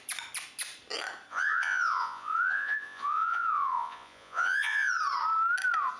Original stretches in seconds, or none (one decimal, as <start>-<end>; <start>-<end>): 0.0-1.3; 4.9-6.0